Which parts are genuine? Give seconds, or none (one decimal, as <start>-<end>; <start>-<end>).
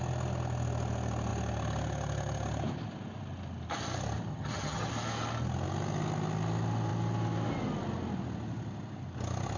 0.0-4.3; 4.9-9.6